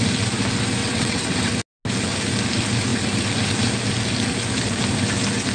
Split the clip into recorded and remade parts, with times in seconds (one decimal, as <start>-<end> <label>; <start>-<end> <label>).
0.0-0.8 recorded; 0.8-1.5 remade; 1.5-5.5 recorded